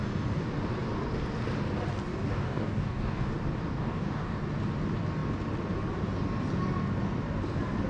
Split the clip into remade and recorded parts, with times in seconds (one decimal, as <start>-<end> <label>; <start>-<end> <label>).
0.0-2.1 recorded; 2.1-3.3 remade; 3.3-3.7 recorded; 3.7-4.4 remade; 4.4-7.9 recorded